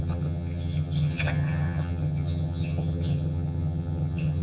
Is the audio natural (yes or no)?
no